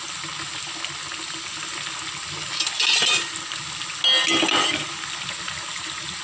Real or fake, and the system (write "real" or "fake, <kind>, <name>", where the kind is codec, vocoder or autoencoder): real